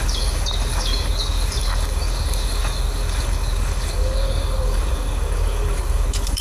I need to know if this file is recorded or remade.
remade